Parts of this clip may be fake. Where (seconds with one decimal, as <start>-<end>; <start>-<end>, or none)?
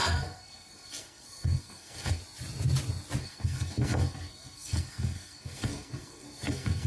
0.0-2.2; 3.2-6.9